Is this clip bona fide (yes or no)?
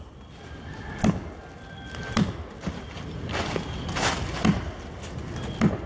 yes